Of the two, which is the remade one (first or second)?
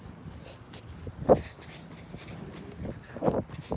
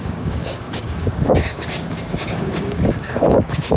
second